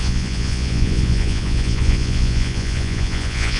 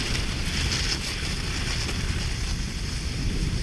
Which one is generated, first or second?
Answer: first